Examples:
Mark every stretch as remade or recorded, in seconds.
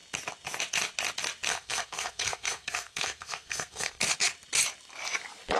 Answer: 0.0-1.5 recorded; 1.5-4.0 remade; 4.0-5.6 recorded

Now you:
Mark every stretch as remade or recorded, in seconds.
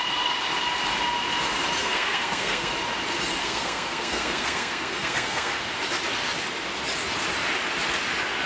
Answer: 0.0-1.8 recorded; 1.8-2.7 remade; 2.7-3.4 recorded; 3.4-5.5 remade; 5.5-8.5 recorded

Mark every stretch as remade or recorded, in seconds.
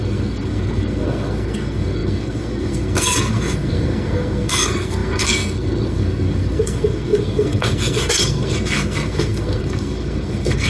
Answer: 0.0-10.7 remade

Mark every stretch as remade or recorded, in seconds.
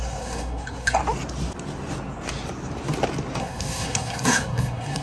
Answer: 0.0-1.0 remade; 1.0-3.4 recorded; 3.4-5.0 remade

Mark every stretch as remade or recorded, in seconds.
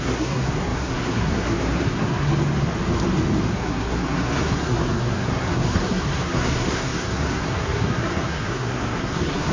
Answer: 0.0-2.3 remade; 2.3-3.5 recorded; 3.5-9.5 remade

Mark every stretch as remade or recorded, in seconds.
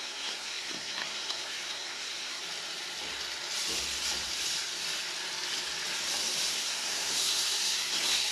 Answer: 0.0-2.4 remade; 2.4-6.5 recorded; 6.5-8.3 remade